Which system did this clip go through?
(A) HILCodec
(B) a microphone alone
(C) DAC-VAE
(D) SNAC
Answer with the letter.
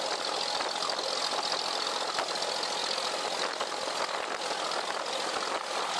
B